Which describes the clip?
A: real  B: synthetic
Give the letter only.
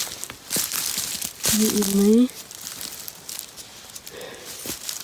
A